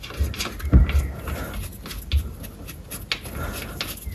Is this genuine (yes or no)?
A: yes